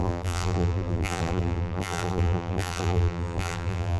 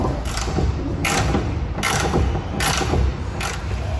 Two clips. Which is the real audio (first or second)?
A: second